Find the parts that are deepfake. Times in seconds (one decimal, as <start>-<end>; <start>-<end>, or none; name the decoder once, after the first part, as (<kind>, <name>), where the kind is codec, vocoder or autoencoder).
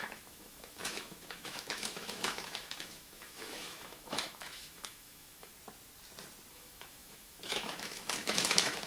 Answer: 0.0-5.5 (autoencoder, DAC-VAE); 6.5-8.9